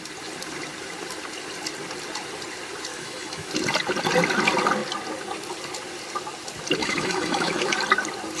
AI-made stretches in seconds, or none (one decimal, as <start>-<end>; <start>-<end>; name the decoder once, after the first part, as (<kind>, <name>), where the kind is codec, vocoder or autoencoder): 2.9-3.5 (autoencoder, DAC-VAE); 6.8-7.8